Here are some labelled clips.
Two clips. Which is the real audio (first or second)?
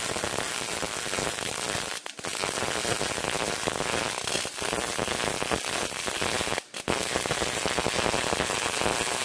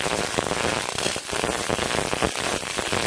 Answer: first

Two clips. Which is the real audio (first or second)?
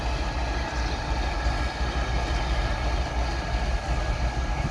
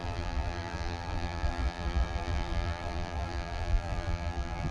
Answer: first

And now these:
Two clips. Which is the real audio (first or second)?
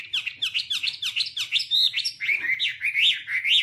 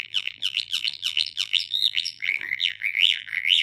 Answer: first